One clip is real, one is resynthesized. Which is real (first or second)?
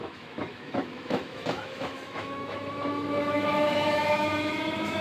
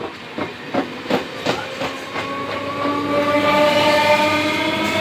second